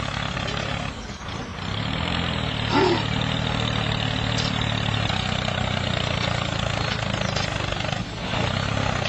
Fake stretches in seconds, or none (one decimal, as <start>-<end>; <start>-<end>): none